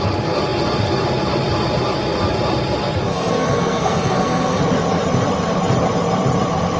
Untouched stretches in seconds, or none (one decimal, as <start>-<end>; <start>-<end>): 0.0-3.1; 4.6-6.8